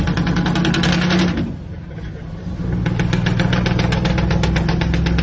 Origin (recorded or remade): recorded